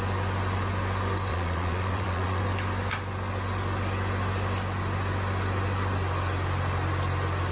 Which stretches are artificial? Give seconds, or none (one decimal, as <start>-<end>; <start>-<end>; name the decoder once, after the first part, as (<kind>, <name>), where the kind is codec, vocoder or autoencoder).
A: 1.3-2.4 (vocoder, Vocos)